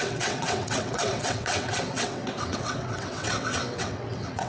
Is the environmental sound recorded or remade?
remade